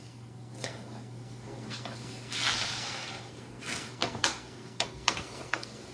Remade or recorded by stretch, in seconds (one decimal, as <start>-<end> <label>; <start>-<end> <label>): 0.0-5.9 remade